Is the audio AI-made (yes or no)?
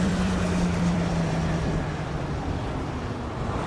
yes